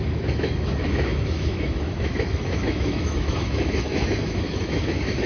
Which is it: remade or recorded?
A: remade